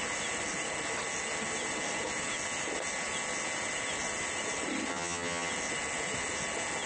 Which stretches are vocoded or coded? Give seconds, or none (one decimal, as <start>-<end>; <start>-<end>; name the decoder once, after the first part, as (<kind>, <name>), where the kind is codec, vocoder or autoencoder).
4.9-5.5 (vocoder, HiFi-GAN)